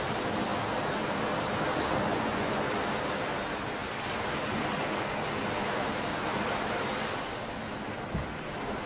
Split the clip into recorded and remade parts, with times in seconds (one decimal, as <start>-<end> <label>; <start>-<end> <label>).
0.0-2.1 recorded; 2.1-2.6 remade; 2.6-8.9 recorded